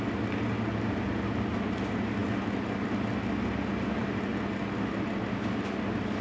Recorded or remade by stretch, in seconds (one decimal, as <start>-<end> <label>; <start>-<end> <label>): 0.0-6.2 recorded